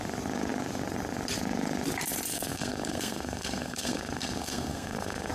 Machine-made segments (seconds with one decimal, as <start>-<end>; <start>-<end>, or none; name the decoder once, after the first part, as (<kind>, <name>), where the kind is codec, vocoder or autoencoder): 2.3-5.3 (codec, SNAC)